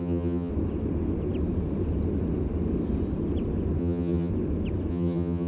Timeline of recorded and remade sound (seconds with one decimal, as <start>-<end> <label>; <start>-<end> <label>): 0.0-0.5 remade; 0.5-3.8 recorded; 3.8-4.3 remade; 4.3-4.9 recorded; 4.9-5.5 remade